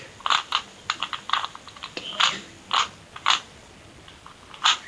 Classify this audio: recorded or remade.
recorded